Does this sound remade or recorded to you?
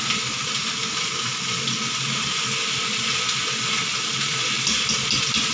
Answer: recorded